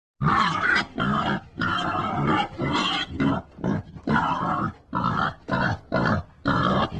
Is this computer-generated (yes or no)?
no